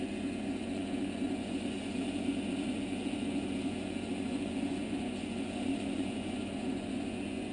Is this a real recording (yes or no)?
no